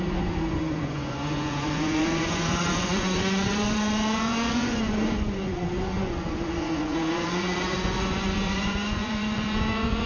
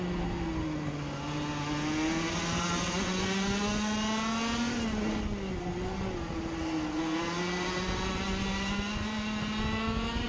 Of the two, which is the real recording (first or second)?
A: second